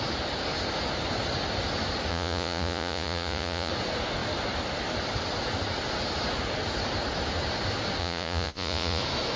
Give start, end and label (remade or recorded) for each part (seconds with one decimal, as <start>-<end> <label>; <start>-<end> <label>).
0.0-2.1 recorded; 2.1-3.7 remade; 3.7-8.0 recorded; 8.0-9.0 remade; 9.0-9.4 recorded